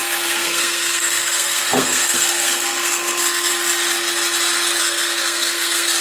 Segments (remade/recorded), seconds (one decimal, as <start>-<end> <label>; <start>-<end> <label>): 0.0-3.5 remade; 3.5-4.8 recorded; 4.8-6.0 remade